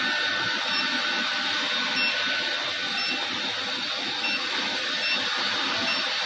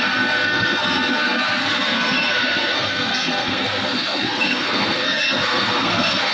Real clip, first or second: first